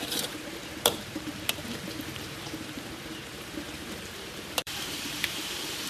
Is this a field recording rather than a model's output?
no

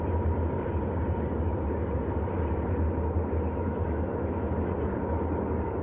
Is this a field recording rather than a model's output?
yes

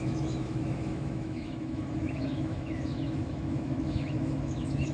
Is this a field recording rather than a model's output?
no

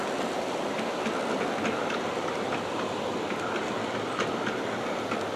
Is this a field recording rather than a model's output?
yes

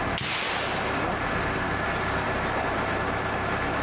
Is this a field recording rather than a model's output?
yes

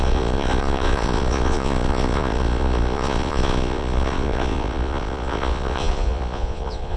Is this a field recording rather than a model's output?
no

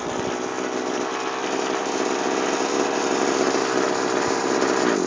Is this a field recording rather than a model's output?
no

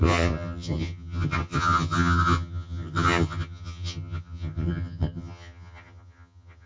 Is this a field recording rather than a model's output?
no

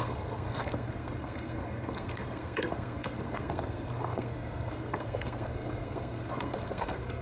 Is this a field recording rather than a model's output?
no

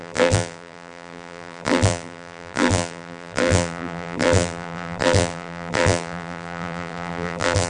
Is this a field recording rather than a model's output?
no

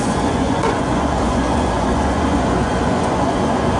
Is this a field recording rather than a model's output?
no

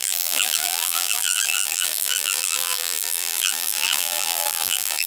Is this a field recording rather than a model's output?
no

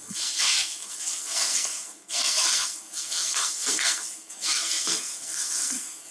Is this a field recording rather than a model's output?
no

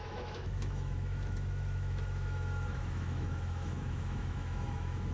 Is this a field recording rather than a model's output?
no